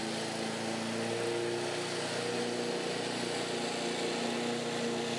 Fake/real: real